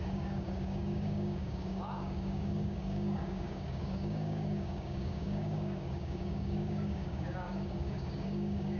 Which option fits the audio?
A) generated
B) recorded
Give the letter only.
A